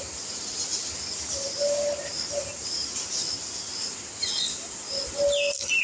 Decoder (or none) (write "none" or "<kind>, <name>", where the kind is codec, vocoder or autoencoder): none